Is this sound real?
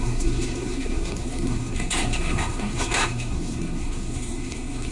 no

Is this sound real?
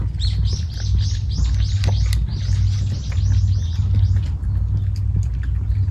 yes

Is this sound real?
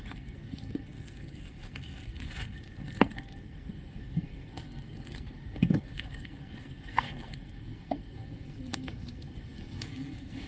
no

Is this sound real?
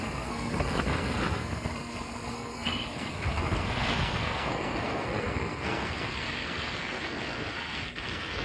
no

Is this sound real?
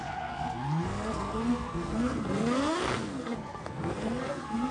no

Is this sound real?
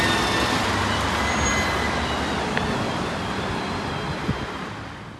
yes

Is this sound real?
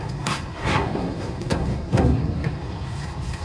no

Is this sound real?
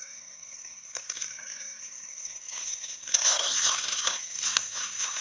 no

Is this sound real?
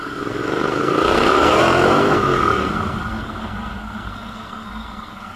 no